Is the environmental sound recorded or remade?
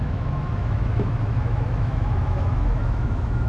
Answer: remade